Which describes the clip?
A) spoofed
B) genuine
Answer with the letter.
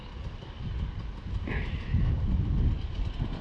B